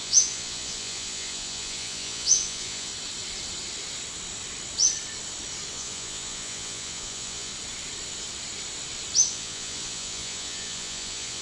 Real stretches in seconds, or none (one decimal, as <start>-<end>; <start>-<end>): 2.9-5.7; 7.5-9.3